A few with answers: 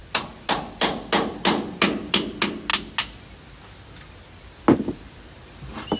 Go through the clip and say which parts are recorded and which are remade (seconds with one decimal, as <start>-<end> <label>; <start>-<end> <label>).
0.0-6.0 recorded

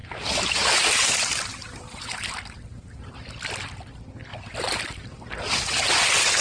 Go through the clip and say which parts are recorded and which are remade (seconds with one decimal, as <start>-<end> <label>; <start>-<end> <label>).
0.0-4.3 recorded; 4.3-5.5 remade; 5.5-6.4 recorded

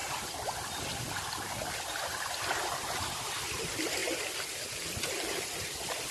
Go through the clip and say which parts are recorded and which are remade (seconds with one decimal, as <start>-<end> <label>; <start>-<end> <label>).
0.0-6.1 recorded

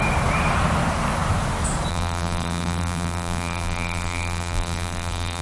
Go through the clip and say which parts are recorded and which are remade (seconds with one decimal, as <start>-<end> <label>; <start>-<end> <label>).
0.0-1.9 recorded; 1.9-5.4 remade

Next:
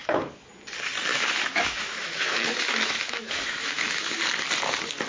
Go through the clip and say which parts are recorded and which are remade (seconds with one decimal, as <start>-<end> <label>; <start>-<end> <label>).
0.0-0.5 remade; 0.5-1.1 recorded; 1.1-4.2 remade; 4.2-5.1 recorded

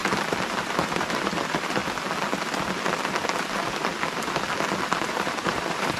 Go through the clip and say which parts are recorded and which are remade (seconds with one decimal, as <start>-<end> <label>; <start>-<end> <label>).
0.0-0.6 recorded; 0.6-1.8 remade; 1.8-5.1 recorded; 5.1-6.0 remade